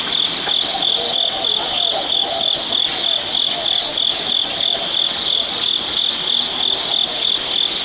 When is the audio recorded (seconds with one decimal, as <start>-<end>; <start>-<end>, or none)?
0.0-7.8